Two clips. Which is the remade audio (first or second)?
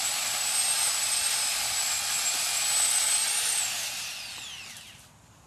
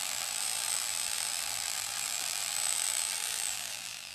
second